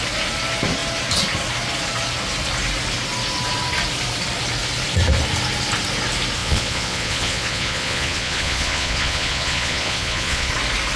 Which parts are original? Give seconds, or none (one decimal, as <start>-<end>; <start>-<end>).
0.0-6.4; 10.5-11.0